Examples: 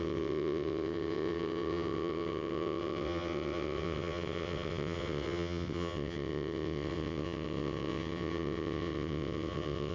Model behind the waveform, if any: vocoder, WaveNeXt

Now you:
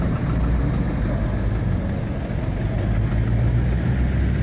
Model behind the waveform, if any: none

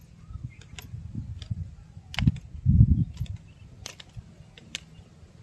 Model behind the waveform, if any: none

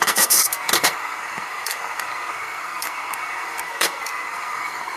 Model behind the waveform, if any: codec, SNAC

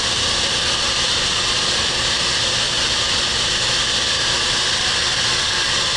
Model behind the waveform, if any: none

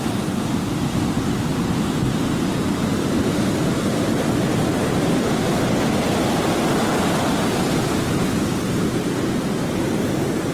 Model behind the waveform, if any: none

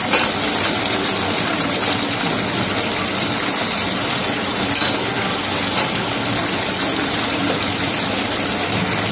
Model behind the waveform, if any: none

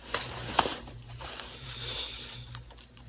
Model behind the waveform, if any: vocoder, BigVGAN v2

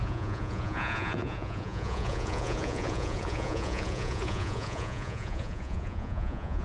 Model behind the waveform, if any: vocoder, Vocos